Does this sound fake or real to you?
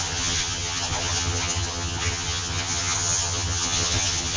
fake